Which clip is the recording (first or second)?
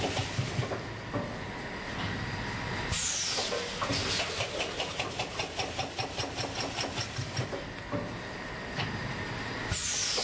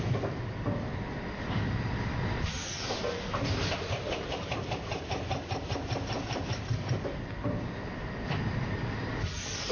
first